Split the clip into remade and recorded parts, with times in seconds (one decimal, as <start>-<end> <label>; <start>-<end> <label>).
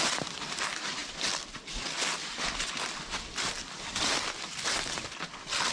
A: 0.0-5.7 recorded